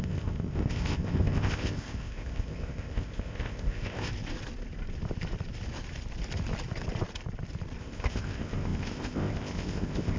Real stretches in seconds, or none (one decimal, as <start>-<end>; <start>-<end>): 4.1-7.8